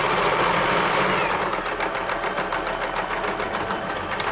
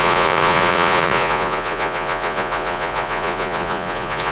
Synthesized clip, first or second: second